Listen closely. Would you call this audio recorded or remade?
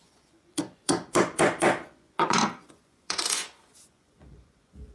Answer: remade